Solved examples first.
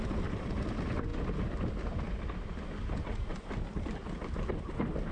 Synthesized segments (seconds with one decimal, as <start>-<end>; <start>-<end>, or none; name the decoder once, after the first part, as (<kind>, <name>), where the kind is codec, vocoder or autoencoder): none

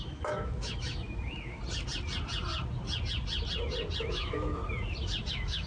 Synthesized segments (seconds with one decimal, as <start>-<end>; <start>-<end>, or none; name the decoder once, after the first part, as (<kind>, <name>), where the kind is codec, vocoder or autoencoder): 0.0-1.6 (autoencoder, DAC-VAE); 4.0-4.6; 5.3-5.7

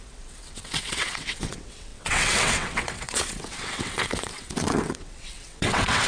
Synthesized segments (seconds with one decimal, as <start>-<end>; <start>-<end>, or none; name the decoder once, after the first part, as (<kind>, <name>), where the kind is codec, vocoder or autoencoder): 0.0-6.1 (vocoder, WaveNeXt)

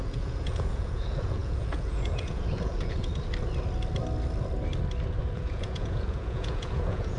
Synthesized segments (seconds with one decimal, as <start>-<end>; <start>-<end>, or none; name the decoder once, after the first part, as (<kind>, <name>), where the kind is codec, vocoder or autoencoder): 0.0-3.1 (vocoder, Vocos); 5.2-7.2

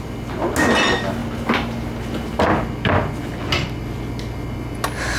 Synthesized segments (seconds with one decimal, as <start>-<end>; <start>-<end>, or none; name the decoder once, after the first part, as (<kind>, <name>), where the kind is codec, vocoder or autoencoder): none

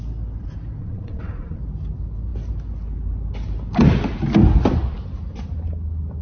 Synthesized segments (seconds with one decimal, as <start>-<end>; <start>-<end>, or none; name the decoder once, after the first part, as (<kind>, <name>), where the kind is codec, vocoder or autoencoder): 0.8-1.6 (vocoder, Vocos)

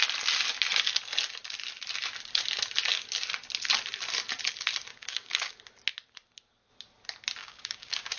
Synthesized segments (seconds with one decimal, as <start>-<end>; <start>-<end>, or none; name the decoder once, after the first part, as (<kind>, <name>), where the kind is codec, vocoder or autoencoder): 4.9-5.5 (codec, DAC); 7.4-8.2

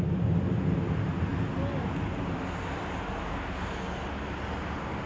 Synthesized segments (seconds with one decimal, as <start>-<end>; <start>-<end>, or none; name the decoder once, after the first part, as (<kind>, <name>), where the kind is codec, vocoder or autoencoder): none